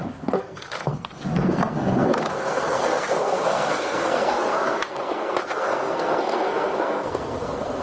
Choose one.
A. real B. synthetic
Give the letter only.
B